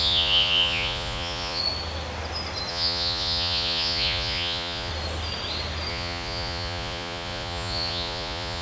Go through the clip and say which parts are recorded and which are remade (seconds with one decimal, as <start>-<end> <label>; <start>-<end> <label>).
0.0-1.6 remade; 1.6-2.7 recorded; 2.7-4.9 remade; 4.9-5.9 recorded; 5.9-8.6 remade